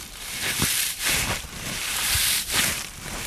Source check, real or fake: fake